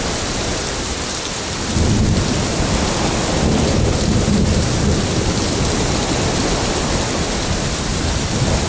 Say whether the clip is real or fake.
fake